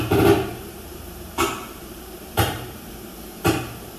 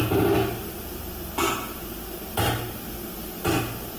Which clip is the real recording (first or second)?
second